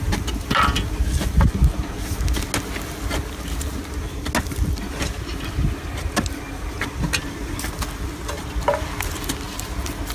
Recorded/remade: recorded